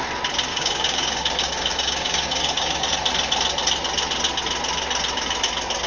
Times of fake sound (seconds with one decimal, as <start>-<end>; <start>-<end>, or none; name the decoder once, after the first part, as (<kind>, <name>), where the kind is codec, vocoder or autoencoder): 0.5-2.9 (codec, DAC)